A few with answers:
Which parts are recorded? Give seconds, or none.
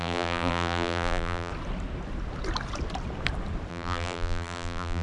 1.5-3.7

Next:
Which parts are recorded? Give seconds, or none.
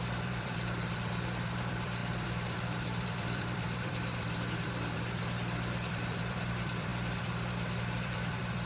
none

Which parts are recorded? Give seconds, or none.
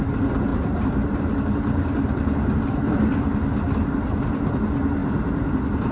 0.0-0.5; 2.9-5.9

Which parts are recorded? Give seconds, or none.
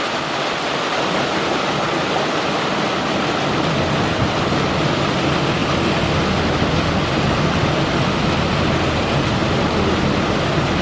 0.0-10.8